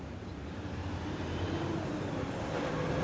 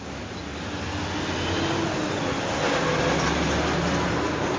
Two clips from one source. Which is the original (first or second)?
second